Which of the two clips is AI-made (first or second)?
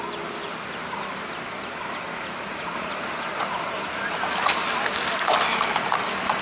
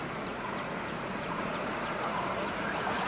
second